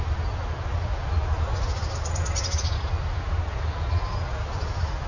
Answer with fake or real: real